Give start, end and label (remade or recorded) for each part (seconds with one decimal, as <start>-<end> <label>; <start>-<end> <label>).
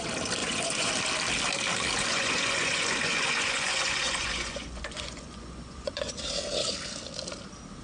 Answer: 0.0-0.4 recorded; 0.4-0.9 remade; 0.9-2.1 recorded; 2.1-6.1 remade; 6.1-7.8 recorded